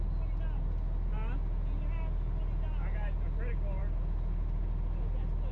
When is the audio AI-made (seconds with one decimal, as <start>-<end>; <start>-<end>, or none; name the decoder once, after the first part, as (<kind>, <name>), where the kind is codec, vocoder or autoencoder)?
none